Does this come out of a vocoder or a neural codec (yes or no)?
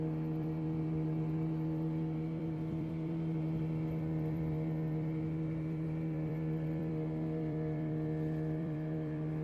yes